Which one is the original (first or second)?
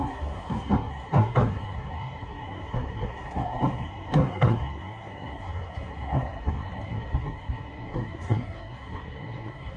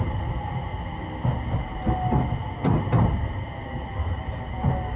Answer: second